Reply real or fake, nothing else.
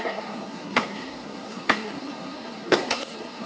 fake